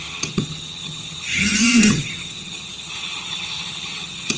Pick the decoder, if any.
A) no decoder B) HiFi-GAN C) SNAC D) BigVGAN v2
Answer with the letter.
B